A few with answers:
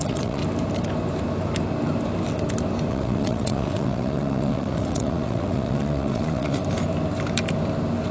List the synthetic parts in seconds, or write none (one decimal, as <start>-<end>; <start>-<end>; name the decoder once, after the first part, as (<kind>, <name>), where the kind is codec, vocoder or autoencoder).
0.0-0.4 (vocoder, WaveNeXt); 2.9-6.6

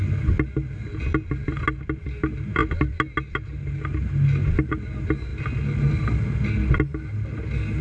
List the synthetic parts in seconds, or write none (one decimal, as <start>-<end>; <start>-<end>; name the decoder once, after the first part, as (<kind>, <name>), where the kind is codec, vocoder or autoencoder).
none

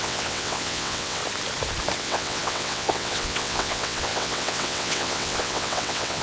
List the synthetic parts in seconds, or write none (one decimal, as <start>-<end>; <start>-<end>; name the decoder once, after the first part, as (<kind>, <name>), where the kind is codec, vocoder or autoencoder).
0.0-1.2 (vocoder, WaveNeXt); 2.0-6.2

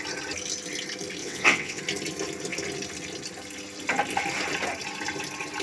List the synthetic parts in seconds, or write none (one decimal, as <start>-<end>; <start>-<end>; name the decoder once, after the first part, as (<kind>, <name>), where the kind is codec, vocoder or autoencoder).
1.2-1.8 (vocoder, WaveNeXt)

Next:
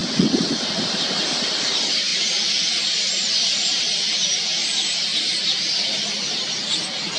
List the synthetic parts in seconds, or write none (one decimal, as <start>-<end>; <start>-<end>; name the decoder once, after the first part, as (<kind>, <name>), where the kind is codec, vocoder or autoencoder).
0.0-0.6 (vocoder, WaveNeXt)